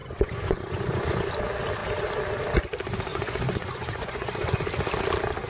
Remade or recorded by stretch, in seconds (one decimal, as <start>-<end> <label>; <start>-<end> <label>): 0.0-1.3 remade; 1.3-3.1 recorded; 3.1-4.6 remade; 4.6-5.5 recorded